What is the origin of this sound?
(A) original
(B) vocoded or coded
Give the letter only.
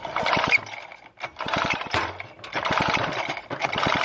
A